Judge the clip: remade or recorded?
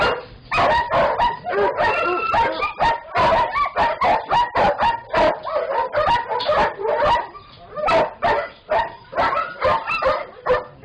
recorded